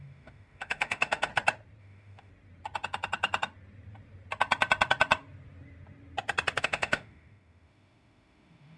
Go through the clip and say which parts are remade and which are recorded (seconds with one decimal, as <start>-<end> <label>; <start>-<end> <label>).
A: 0.0-1.3 remade; 1.3-1.8 recorded; 1.8-2.3 remade; 2.3-6.6 recorded; 6.6-8.8 remade